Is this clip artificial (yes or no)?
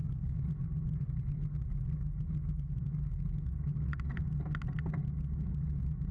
no